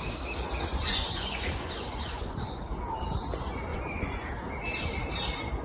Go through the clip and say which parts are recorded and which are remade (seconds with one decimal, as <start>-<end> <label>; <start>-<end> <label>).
0.0-0.7 recorded; 0.7-2.6 remade; 2.6-3.7 recorded; 3.7-4.3 remade; 4.3-5.6 recorded